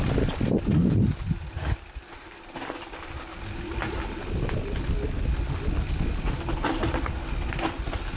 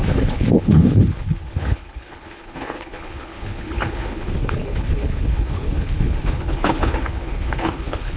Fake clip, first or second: second